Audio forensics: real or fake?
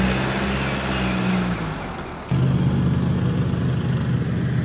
real